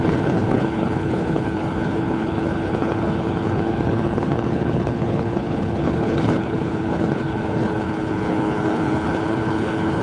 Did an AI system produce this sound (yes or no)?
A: yes